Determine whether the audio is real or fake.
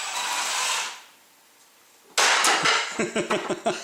real